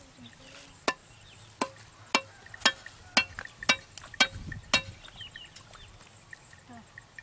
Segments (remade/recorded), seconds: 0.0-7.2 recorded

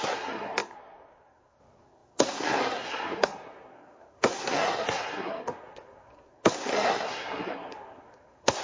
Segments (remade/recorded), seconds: 0.0-8.6 remade

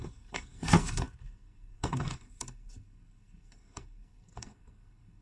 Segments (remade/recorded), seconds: 0.0-5.2 remade

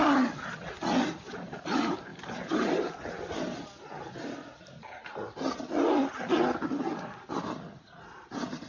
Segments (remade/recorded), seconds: 0.0-8.7 recorded

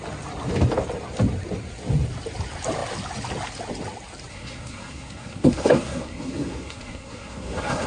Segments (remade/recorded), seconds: 0.0-4.3 recorded; 4.3-7.9 remade

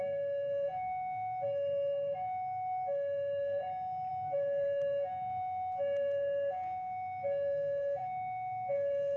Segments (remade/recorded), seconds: 0.0-3.6 remade; 3.6-4.1 recorded; 4.1-9.2 remade

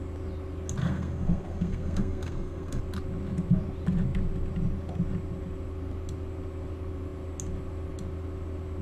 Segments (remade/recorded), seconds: 0.0-0.8 recorded; 0.8-2.8 remade; 2.8-8.8 recorded